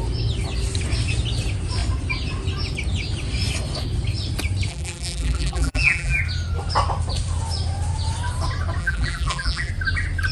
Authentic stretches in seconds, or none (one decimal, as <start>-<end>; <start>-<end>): 0.0-4.7; 6.2-8.8; 9.7-10.3